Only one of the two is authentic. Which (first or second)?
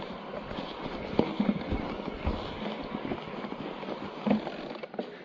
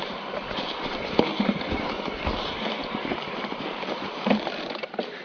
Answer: first